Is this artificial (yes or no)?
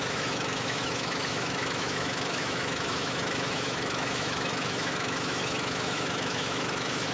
yes